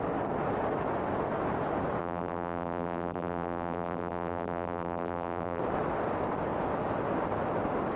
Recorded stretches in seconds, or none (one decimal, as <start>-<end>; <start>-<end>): 0.0-2.0; 5.6-8.0